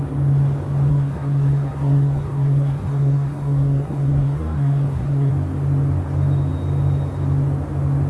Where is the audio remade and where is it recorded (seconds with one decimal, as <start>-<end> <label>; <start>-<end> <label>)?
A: 0.0-0.9 recorded; 0.9-5.3 remade; 5.3-8.1 recorded